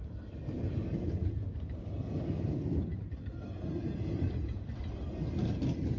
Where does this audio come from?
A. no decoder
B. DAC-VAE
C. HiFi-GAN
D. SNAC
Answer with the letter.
A